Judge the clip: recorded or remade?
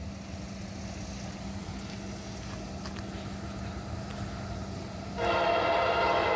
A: recorded